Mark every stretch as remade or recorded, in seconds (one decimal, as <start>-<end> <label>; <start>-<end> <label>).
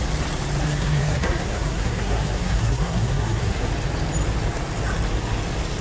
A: 0.0-0.6 recorded; 0.6-3.7 remade; 3.7-5.8 recorded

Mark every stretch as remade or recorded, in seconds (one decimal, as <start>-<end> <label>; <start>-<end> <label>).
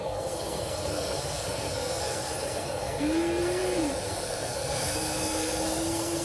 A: 0.0-6.2 remade